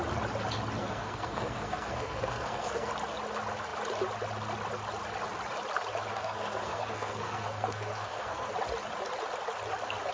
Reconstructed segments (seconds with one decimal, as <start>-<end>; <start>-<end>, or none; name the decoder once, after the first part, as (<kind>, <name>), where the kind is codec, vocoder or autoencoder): 0.8-2.9 (codec, SNAC); 6.1-8.5